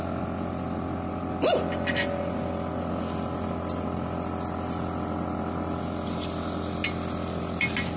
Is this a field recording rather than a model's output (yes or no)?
yes